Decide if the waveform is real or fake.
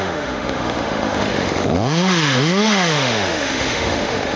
fake